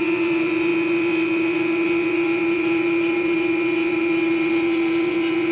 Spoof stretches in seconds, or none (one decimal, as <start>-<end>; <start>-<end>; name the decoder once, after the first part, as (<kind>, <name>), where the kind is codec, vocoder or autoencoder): 0.0-5.5 (vocoder, Vocos)

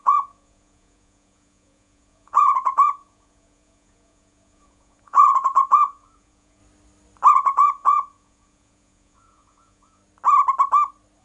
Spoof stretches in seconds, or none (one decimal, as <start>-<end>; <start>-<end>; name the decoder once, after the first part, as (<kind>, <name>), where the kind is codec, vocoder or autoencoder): 0.0-6.6 (vocoder, Vocos); 7.3-10.0

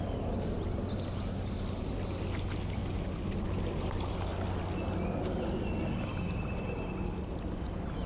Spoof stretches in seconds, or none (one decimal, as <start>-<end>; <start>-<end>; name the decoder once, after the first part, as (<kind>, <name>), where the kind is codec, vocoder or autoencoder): none

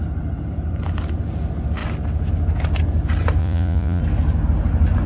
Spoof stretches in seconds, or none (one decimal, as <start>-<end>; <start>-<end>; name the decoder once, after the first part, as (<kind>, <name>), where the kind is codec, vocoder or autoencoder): 3.4-4.0 (vocoder, Vocos)

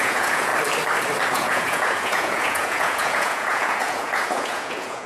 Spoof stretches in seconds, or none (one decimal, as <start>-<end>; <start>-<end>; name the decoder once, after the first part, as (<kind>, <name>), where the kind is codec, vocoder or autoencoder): 0.0-0.5 (vocoder, Vocos); 1.3-5.1

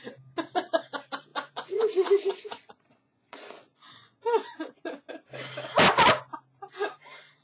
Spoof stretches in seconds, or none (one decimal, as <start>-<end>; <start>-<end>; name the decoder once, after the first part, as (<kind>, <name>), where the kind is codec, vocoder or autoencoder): 1.3-5.1 (vocoder, Vocos)

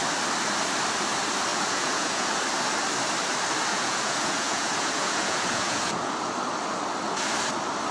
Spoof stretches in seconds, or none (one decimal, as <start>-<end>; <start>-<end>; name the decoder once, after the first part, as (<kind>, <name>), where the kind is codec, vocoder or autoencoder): 1.5-2.4 (vocoder, Vocos); 3.7-6.1